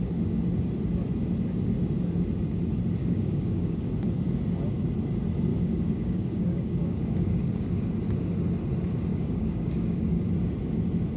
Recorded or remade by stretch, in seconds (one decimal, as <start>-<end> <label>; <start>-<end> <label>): 0.0-3.0 recorded; 3.0-3.9 remade; 3.9-5.5 recorded; 5.5-7.9 remade; 7.9-9.1 recorded; 9.1-10.2 remade; 10.2-11.2 recorded